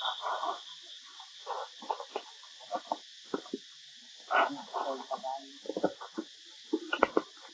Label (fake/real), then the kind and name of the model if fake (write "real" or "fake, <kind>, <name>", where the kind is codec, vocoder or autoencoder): real